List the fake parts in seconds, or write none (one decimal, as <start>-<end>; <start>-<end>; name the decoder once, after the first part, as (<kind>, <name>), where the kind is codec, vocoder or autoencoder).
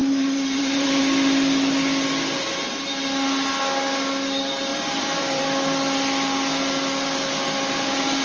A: 0.0-1.0 (vocoder, BigVGAN v2); 4.7-5.4